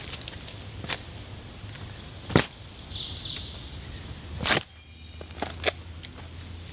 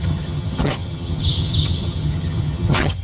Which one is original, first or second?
first